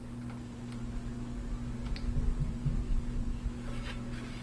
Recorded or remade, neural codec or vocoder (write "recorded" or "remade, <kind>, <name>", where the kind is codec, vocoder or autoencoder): recorded